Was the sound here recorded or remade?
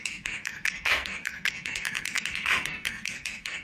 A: remade